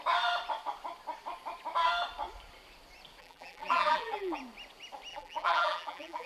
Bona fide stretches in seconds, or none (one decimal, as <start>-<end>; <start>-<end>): 0.0-3.2; 4.4-5.1